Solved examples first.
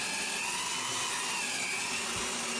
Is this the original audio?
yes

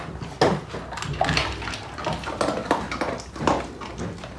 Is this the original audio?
yes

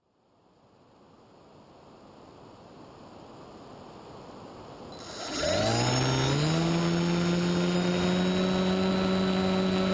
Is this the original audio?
yes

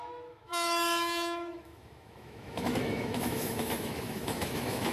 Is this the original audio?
no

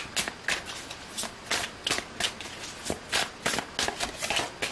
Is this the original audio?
yes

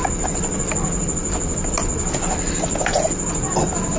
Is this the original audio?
yes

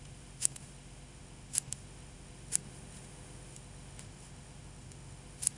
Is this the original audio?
no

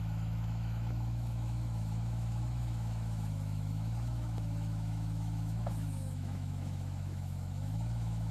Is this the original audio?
no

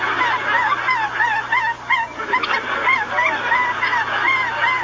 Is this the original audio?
yes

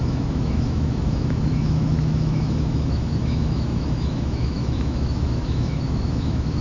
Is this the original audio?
no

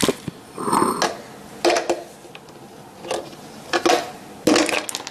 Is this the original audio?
yes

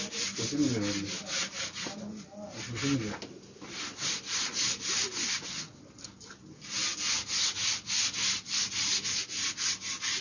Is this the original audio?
yes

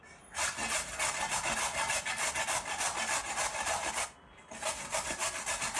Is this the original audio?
yes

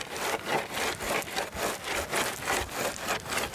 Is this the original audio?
yes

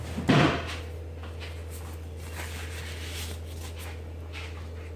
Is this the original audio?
yes